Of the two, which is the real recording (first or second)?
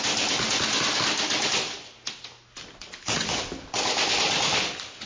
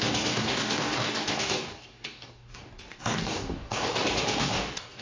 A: first